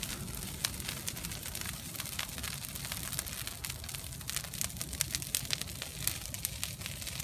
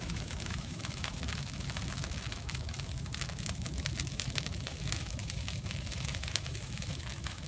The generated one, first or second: second